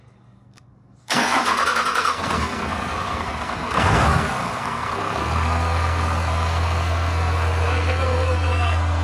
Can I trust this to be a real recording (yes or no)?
no